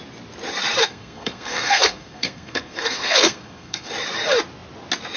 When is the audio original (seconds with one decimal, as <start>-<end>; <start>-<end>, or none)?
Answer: 0.0-0.8; 3.9-5.2